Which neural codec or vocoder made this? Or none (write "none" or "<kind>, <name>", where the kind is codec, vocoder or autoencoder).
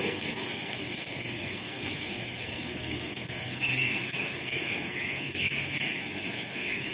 codec, SNAC